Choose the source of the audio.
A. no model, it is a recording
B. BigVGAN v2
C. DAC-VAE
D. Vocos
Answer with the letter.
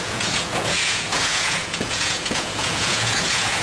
D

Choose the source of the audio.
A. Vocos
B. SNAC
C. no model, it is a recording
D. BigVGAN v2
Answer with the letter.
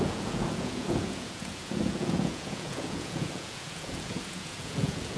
A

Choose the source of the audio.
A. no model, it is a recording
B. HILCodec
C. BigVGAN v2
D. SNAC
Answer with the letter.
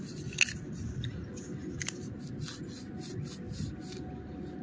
A